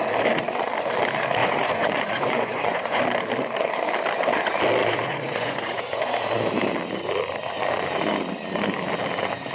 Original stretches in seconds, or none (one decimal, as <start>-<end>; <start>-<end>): 0.0-1.4; 3.0-4.8; 6.2-9.5